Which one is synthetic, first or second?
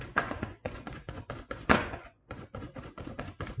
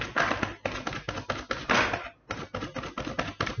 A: first